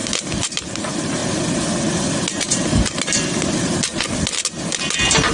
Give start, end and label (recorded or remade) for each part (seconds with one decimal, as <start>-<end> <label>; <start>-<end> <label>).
0.0-1.2 remade; 1.2-2.3 recorded; 2.3-3.9 remade; 3.9-5.3 recorded